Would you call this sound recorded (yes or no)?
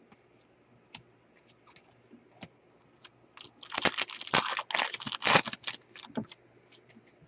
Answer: yes